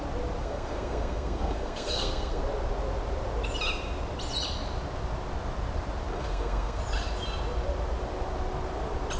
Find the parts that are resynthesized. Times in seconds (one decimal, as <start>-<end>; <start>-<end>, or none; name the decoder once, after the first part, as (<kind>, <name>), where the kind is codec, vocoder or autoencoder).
0.4-2.4 (codec, SNAC); 6.1-6.8